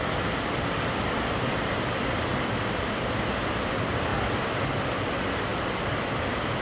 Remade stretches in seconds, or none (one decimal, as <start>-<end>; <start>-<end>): none